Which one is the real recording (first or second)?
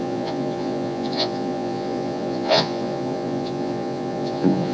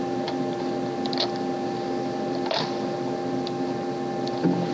second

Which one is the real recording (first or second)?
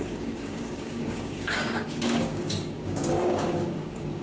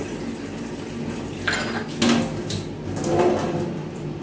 second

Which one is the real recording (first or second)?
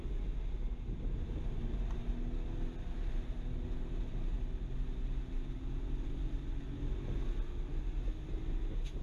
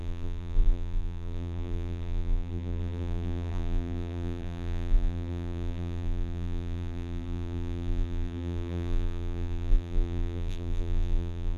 first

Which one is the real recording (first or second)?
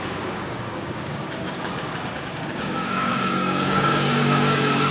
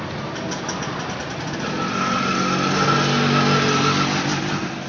second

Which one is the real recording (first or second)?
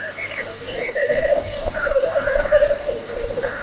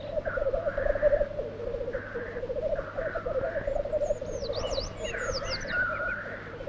second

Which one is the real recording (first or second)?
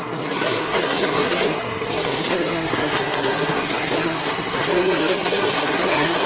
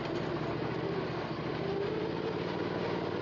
second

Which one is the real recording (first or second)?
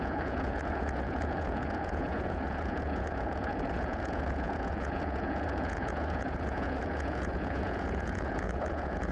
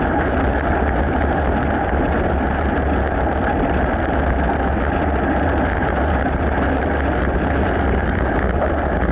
second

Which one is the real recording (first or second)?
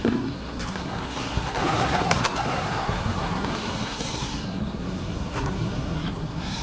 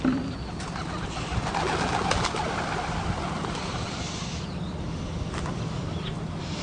second